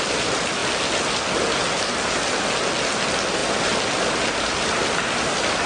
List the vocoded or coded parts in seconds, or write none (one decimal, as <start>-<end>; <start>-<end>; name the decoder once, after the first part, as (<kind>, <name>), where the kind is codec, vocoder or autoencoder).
0.0-0.6 (vocoder, BigVGAN v2); 3.0-5.7